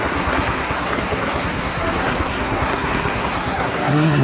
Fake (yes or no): yes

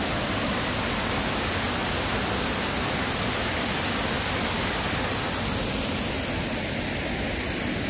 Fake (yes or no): no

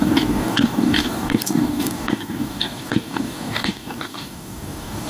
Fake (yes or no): yes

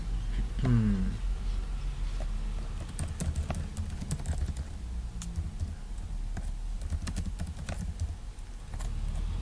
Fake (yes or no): no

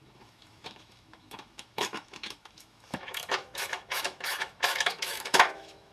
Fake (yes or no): yes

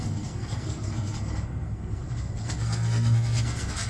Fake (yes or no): yes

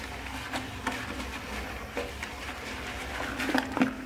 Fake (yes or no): no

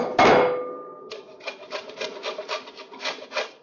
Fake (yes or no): no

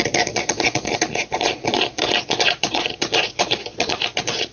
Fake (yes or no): yes